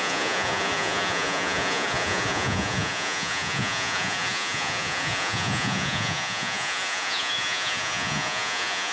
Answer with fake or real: fake